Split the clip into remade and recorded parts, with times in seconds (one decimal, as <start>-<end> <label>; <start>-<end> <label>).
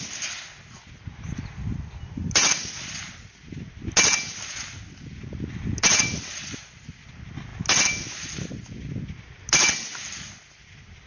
0.0-11.1 recorded